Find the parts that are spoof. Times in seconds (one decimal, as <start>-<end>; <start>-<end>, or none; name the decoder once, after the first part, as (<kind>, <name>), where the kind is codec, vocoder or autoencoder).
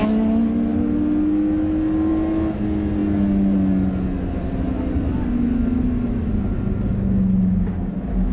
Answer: none